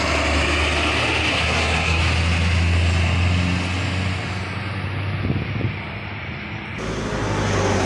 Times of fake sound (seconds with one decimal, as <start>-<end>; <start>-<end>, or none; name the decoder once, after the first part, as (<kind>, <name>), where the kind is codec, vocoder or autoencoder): 1.3-2.0 (codec, SNAC)